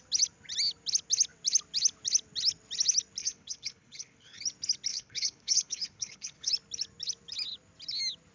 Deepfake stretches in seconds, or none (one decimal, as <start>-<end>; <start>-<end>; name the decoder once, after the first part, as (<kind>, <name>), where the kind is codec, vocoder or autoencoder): 3.2-4.4 (codec, HILCodec); 4.9-6.5